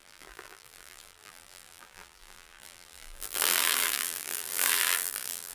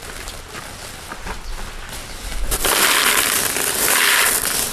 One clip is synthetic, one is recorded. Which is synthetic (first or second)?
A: first